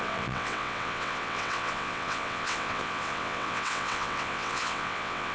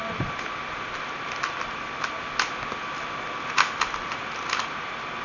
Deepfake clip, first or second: first